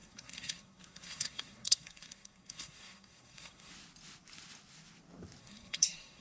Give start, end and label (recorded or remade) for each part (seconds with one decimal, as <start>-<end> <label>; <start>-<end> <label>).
0.0-3.7 remade; 3.7-5.4 recorded; 5.4-6.2 remade